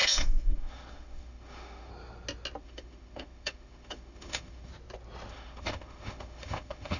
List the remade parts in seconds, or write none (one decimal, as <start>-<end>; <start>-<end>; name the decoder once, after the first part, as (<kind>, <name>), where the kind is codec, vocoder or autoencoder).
0.0-1.9 (autoencoder, DAC-VAE); 2.6-4.7; 5.3-7.0